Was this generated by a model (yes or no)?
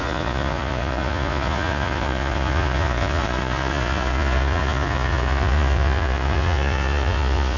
yes